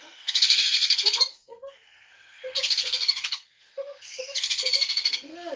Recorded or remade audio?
remade